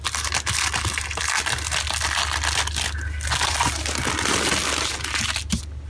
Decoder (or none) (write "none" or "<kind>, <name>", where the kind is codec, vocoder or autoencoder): none